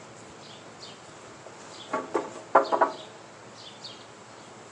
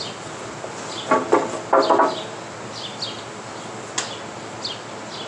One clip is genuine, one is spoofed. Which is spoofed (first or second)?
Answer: first